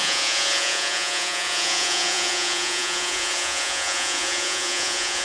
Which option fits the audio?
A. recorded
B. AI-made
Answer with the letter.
B